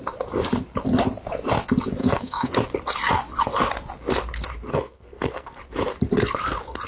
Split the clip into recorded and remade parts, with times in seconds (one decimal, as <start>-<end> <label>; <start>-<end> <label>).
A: 0.0-2.0 recorded; 2.0-2.5 remade; 2.5-4.7 recorded; 4.7-5.6 remade; 5.6-6.9 recorded